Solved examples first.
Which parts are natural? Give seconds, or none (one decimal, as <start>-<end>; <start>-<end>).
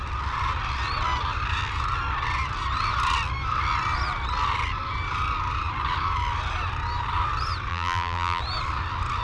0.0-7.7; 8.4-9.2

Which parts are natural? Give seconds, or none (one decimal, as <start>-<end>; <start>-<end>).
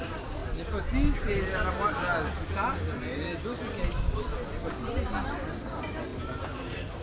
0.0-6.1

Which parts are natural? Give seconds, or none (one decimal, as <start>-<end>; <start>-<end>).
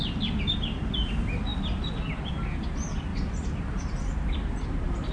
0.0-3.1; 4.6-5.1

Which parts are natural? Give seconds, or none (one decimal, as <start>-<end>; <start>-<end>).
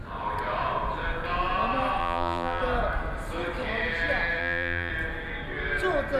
0.0-2.0; 2.6-4.4; 4.9-6.2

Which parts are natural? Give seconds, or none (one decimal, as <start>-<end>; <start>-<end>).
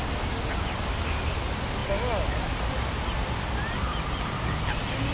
0.0-5.1